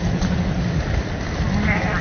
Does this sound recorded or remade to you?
recorded